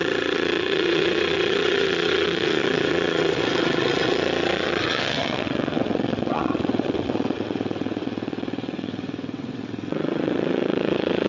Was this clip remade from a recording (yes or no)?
yes